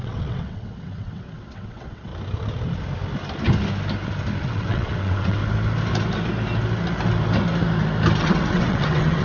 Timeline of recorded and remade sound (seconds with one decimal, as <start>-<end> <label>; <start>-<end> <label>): 0.0-2.1 remade; 2.1-4.4 recorded; 4.4-5.4 remade; 5.4-8.2 recorded; 8.2-9.2 remade